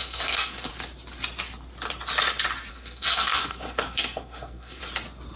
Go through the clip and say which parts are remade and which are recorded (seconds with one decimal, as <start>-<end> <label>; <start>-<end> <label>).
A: 0.0-0.7 remade; 0.7-2.7 recorded; 2.7-4.8 remade; 4.8-5.4 recorded